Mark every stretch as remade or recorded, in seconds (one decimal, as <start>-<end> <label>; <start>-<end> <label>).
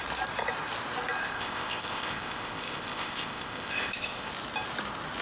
0.0-1.2 recorded; 1.2-4.3 remade; 4.3-5.2 recorded